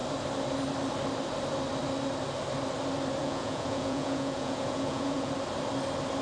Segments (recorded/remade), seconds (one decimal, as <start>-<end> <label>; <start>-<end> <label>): 0.0-3.2 recorded; 3.2-5.3 remade; 5.3-6.2 recorded